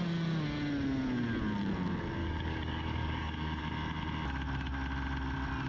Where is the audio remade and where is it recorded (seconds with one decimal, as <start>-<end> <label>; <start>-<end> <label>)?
0.0-2.2 recorded; 2.2-3.6 remade; 3.6-5.7 recorded

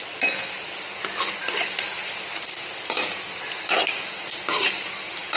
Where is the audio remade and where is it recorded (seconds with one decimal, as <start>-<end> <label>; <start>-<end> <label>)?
0.0-5.4 recorded

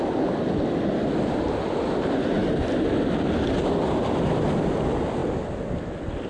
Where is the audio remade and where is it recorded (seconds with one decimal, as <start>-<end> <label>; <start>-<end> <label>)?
0.0-6.3 recorded

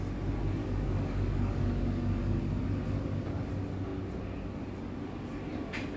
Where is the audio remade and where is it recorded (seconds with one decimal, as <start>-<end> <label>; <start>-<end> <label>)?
0.0-0.6 recorded; 0.6-2.4 remade; 2.4-6.0 recorded

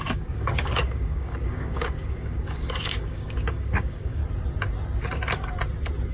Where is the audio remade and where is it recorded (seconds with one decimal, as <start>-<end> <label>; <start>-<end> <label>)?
0.0-4.2 remade; 4.2-6.1 recorded

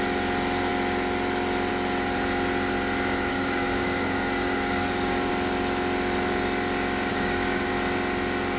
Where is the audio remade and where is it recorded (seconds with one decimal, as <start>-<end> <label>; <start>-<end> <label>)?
0.0-3.3 recorded; 3.3-5.3 remade; 5.3-7.1 recorded; 7.1-7.7 remade; 7.7-8.6 recorded

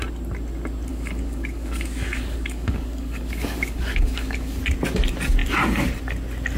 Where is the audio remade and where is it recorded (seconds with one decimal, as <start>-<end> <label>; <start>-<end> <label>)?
0.0-0.9 recorded; 0.9-4.6 remade; 4.6-6.6 recorded